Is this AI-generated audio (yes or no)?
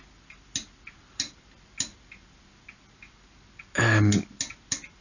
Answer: no